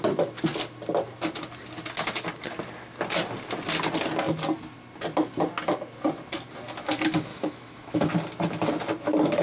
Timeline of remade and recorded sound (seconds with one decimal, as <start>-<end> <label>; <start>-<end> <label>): 0.0-7.3 recorded; 7.3-8.1 remade; 8.1-9.4 recorded